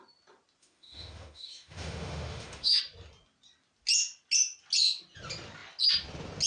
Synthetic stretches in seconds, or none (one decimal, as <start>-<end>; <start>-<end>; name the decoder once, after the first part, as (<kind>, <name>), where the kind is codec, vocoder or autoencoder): 0.6-2.8 (autoencoder, DAC-VAE)

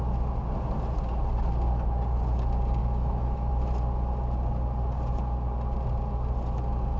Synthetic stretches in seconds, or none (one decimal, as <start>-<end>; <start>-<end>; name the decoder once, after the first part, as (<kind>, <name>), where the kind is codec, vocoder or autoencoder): 2.8-3.5 (autoencoder, DAC-VAE)